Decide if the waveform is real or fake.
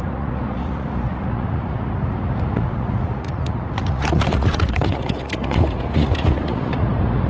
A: fake